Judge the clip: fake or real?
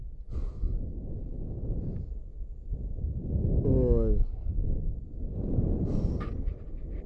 real